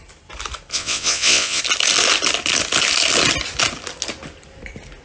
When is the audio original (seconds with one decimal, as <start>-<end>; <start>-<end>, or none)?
0.0-0.7; 1.6-5.0